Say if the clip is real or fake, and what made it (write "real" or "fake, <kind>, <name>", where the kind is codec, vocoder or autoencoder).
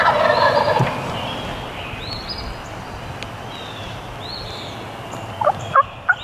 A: real